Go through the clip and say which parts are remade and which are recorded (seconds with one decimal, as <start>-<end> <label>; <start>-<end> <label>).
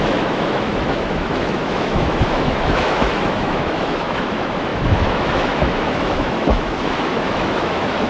0.0-8.1 remade